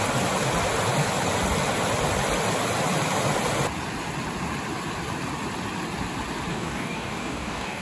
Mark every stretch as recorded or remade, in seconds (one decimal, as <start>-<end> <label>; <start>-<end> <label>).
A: 0.0-6.5 recorded; 6.5-7.8 remade

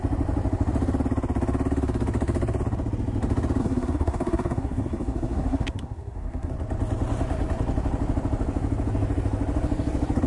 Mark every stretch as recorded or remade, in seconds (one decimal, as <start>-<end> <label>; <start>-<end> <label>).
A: 0.0-3.6 recorded; 3.6-6.5 remade; 6.5-10.3 recorded

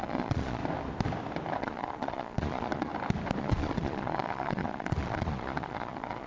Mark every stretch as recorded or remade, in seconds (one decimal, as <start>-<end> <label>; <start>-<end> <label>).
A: 0.0-0.6 remade; 0.6-1.6 recorded; 1.6-2.9 remade; 2.9-3.4 recorded; 3.4-6.3 remade

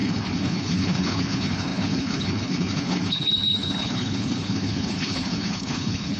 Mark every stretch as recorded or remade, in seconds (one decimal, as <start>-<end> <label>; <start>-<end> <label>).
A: 0.0-6.2 remade

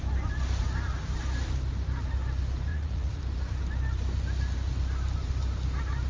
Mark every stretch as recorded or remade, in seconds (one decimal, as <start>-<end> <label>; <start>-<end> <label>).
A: 0.0-2.7 recorded; 2.7-3.2 remade; 3.2-6.1 recorded